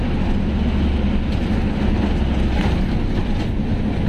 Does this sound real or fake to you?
real